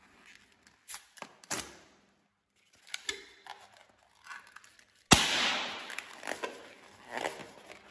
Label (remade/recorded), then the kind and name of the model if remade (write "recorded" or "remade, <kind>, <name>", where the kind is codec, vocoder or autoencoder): recorded